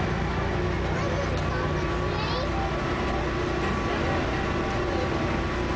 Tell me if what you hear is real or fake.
real